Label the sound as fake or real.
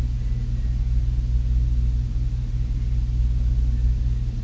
real